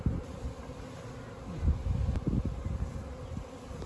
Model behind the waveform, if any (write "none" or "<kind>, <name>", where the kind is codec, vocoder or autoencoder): none